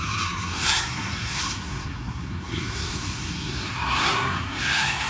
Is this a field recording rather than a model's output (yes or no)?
no